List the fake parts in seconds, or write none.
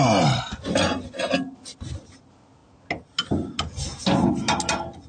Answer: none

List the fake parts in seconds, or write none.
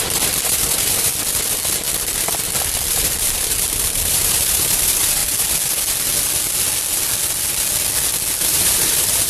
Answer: 0.0-1.1; 2.9-5.2; 8.4-9.3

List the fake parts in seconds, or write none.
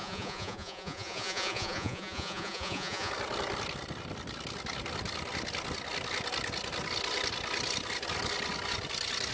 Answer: 0.0-3.1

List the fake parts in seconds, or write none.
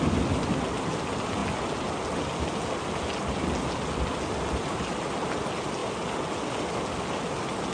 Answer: none